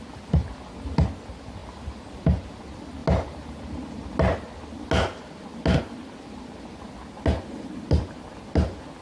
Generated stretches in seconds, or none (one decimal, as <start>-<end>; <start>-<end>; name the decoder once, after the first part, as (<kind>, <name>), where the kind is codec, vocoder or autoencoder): none